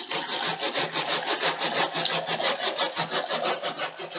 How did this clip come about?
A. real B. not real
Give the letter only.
A